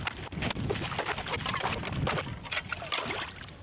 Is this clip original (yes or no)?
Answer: yes